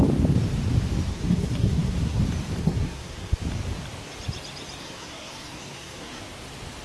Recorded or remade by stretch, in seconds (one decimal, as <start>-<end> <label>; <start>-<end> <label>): 0.0-1.1 recorded; 1.1-2.2 remade; 2.2-2.6 recorded; 2.6-3.4 remade; 3.4-4.8 recorded; 4.8-6.3 remade; 6.3-6.8 recorded